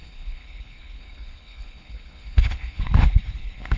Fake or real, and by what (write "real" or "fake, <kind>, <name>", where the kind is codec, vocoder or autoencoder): fake, codec, HILCodec